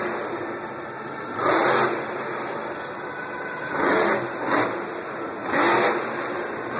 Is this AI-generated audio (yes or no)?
no